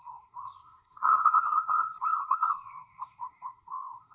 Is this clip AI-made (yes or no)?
yes